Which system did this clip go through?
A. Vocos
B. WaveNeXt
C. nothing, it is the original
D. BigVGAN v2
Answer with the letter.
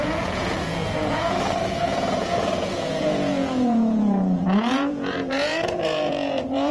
A